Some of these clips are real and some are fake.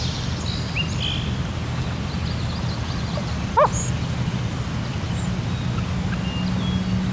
real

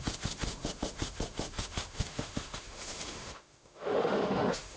fake